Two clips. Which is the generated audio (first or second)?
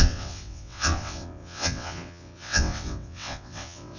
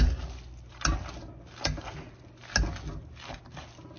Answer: first